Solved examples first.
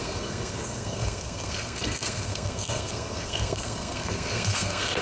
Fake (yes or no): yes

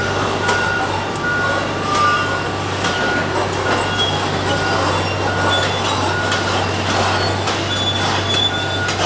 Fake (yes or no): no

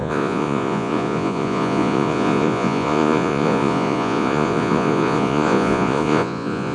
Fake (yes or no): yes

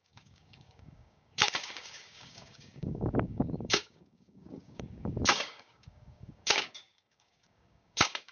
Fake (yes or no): yes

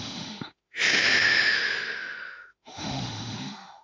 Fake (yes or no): yes